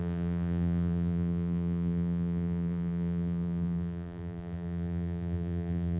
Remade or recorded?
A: remade